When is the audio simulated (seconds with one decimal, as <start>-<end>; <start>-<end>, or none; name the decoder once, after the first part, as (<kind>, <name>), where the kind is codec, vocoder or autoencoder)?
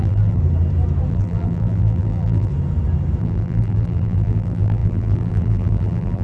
0.0-0.4 (vocoder, BigVGAN v2); 1.1-2.5; 3.2-6.2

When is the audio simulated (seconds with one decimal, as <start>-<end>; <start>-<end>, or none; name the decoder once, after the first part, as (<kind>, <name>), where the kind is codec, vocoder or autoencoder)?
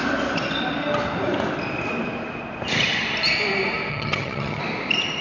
3.9-4.6 (vocoder, HiFi-GAN)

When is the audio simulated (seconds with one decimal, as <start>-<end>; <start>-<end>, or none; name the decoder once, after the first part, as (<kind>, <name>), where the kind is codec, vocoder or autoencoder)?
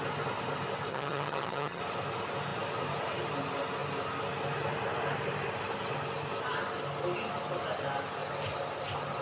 0.9-1.8 (vocoder, HiFi-GAN)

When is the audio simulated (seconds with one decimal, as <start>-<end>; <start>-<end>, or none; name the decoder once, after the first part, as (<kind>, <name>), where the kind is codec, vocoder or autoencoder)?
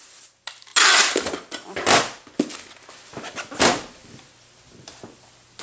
none